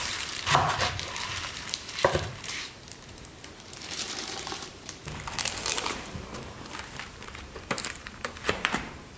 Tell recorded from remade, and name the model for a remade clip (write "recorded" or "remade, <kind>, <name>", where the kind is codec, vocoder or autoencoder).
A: remade, vocoder, BigVGAN v2